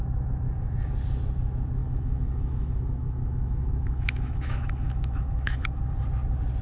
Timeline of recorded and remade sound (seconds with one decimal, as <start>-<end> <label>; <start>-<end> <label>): 0.0-1.8 recorded; 1.8-5.8 remade; 5.8-6.6 recorded